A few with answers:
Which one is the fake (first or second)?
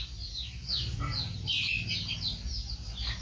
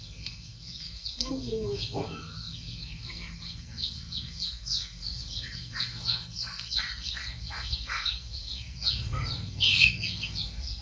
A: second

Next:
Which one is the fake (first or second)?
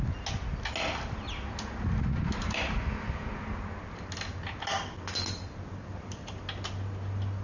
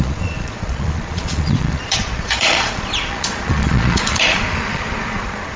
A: second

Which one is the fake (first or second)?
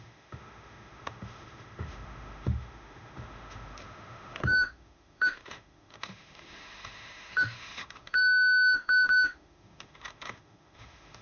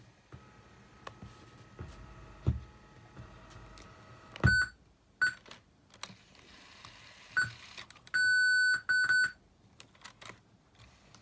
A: first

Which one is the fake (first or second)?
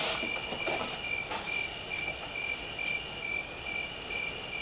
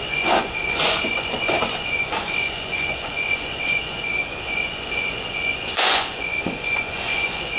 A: second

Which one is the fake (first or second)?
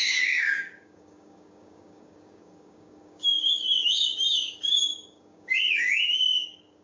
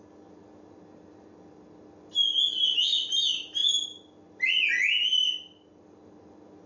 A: first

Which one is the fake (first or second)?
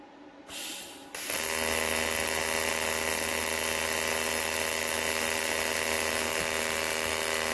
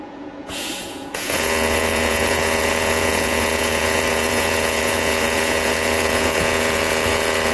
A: second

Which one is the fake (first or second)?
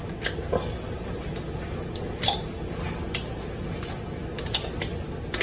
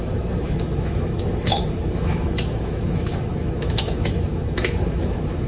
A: second